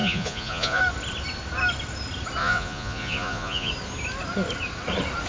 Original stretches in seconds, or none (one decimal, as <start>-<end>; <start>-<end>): 0.8-2.4; 3.7-5.3